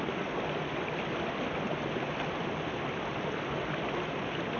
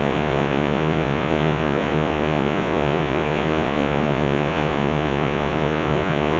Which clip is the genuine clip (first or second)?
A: first